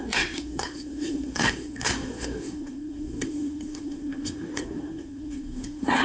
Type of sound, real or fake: fake